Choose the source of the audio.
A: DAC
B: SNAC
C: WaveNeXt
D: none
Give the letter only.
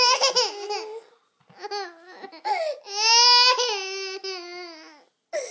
D